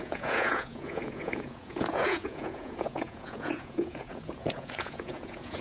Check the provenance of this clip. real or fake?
fake